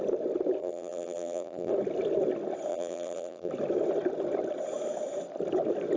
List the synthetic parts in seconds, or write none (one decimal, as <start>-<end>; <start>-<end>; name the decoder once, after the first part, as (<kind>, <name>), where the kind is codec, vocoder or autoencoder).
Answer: 0.6-1.7 (vocoder, BigVGAN v2); 2.7-3.5